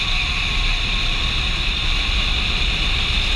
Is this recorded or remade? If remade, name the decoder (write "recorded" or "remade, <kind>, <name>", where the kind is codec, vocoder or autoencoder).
recorded